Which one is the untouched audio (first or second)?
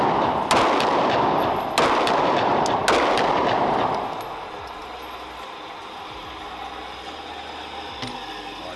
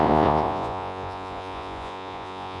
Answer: first